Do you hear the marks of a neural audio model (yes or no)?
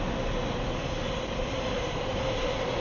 no